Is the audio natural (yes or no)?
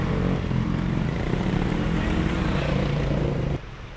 no